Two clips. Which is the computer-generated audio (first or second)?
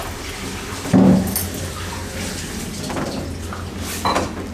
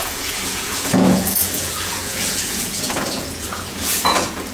second